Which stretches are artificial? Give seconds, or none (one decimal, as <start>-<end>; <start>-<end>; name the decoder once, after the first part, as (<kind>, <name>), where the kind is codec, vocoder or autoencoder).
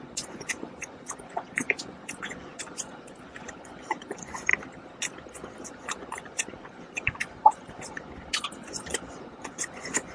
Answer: 0.0-4.5 (vocoder, Vocos); 5.7-10.1